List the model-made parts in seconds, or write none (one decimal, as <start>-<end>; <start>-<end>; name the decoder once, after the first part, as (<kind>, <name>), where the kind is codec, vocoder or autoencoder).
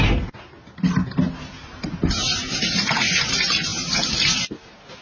none